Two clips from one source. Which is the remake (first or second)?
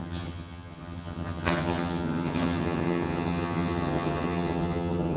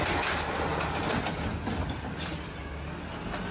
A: first